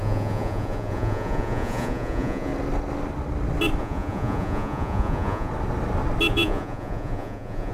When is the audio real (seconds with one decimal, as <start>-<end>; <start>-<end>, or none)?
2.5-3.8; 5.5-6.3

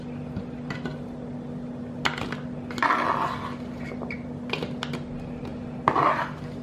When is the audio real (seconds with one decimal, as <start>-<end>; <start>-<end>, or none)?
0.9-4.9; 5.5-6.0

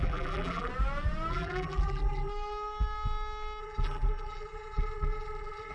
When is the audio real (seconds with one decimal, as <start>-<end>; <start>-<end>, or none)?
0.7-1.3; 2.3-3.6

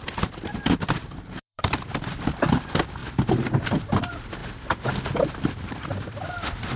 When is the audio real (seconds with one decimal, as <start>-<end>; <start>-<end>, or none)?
3.0-3.6; 4.4-5.2; 5.9-6.8

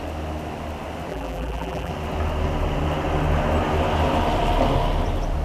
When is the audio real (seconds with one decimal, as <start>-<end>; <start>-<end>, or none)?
0.0-1.1; 1.9-5.4

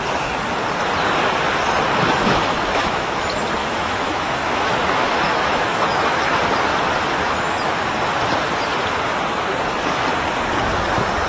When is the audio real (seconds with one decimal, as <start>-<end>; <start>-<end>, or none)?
0.0-2.2; 3.2-3.6; 6.2-11.3

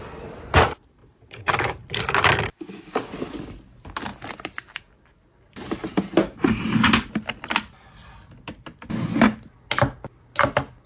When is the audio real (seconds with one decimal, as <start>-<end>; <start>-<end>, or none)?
0.0-1.0; 1.5-10.9